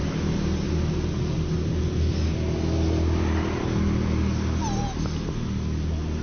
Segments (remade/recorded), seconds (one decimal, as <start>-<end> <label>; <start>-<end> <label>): 0.0-6.2 recorded